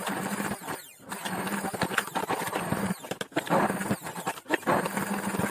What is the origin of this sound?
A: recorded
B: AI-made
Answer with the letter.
A